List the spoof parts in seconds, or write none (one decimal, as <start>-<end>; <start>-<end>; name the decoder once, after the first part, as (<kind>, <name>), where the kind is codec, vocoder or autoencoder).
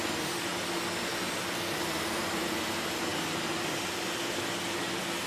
none